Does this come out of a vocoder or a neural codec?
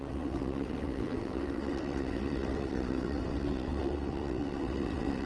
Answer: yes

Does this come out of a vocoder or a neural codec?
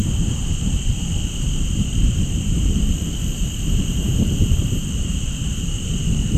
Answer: yes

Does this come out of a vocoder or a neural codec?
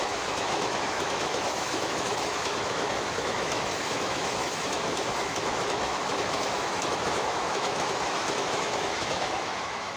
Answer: yes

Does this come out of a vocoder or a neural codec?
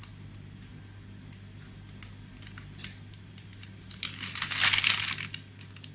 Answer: no